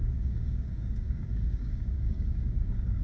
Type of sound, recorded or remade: remade